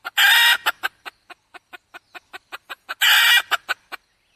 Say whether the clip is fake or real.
real